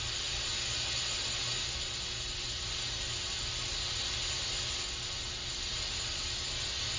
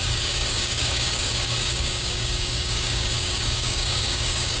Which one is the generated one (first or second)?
second